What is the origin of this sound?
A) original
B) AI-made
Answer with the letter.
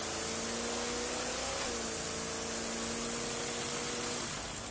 A